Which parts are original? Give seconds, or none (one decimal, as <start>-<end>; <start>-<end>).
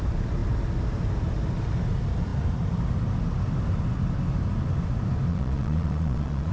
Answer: 0.0-5.3